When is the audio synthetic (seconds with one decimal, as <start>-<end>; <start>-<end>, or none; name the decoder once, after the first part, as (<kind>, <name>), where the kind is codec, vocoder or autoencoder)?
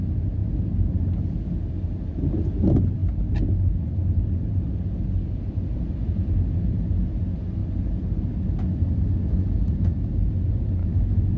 10.8-11.4 (autoencoder, DAC-VAE)